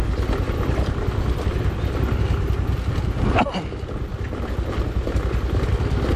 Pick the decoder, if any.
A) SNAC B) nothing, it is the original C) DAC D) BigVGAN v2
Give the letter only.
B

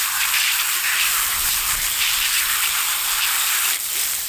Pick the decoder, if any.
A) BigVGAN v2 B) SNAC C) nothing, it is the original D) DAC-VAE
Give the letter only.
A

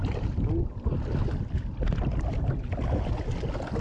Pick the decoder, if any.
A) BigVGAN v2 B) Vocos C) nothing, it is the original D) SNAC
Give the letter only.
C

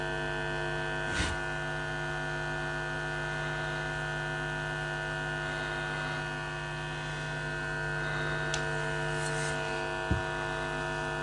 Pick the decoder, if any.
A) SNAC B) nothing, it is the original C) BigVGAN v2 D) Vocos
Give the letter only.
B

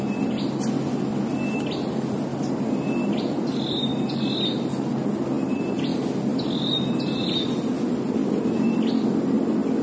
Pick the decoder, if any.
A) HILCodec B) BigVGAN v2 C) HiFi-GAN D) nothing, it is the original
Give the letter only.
D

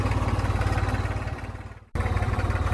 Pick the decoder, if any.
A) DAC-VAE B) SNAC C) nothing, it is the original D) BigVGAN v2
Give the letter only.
D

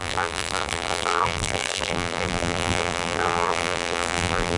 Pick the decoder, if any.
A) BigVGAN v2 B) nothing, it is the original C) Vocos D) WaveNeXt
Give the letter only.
A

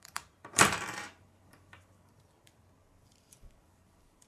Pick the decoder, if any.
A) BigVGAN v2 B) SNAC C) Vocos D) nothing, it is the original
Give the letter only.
A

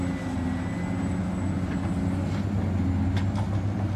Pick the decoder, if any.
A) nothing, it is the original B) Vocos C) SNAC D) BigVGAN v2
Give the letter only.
A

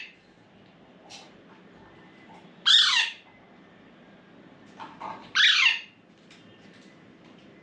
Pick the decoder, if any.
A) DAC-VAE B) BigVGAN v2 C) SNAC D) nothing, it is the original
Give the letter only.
B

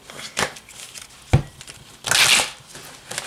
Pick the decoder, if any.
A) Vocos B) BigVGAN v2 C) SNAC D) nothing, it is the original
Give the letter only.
D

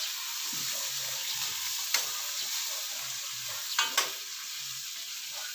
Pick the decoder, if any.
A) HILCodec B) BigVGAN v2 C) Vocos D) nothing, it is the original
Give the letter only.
D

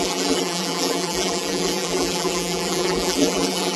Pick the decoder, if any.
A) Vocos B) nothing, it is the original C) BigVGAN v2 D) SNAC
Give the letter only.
C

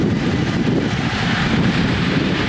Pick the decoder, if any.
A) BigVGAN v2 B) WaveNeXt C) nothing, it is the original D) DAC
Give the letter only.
A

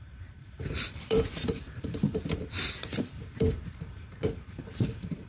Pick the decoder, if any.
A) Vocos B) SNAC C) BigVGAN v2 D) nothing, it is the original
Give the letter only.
C